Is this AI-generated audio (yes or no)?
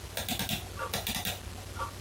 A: no